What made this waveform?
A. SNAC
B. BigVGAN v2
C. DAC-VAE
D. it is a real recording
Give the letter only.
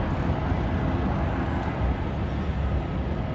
D